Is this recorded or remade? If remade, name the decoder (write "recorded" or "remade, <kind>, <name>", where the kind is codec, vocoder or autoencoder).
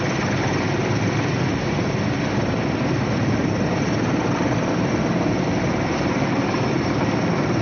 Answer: recorded